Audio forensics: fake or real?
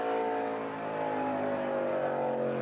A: real